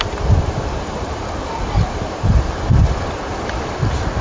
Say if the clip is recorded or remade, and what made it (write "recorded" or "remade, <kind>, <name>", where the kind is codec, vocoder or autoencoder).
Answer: remade, vocoder, BigVGAN v2